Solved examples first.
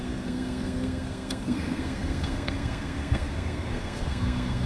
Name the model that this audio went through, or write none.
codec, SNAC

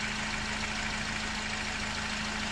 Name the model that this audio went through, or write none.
none